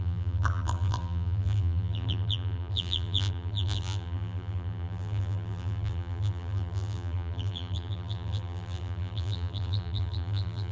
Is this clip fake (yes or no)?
yes